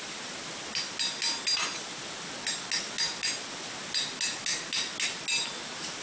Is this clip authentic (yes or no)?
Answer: yes